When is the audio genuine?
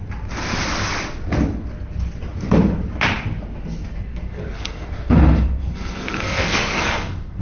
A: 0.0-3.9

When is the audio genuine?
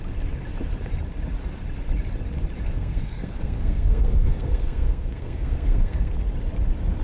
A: 0.0-2.7; 6.1-7.0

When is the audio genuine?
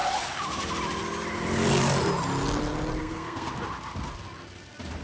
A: 0.0-3.0; 3.5-5.0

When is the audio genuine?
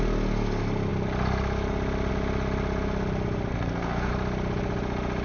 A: 0.0-3.5; 4.1-5.2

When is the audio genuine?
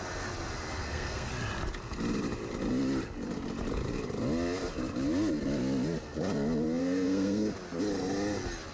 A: 0.0-0.8; 1.3-6.8; 7.5-8.7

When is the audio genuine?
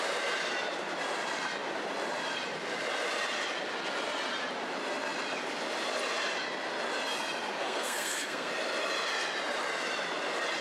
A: 0.0-7.6; 8.5-10.6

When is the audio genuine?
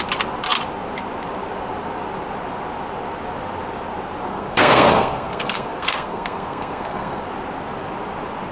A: 0.0-4.3; 7.2-8.5